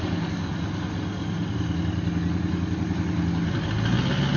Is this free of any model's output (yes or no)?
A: yes